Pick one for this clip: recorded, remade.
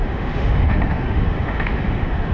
remade